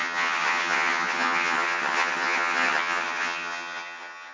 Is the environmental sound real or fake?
fake